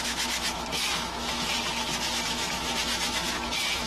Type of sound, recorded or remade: remade